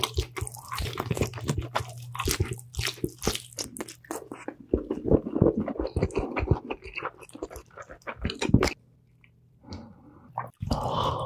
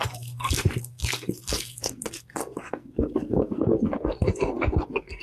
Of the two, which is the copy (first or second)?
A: second